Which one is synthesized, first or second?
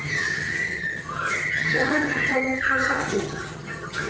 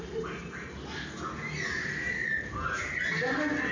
first